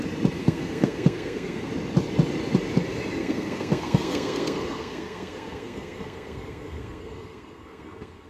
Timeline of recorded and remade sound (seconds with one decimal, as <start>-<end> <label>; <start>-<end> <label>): 0.0-0.4 recorded; 0.4-1.7 remade; 1.7-3.2 recorded; 3.2-8.3 remade